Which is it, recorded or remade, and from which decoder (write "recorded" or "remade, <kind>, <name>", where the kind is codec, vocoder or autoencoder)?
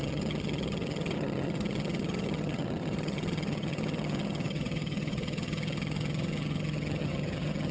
remade, vocoder, HiFi-GAN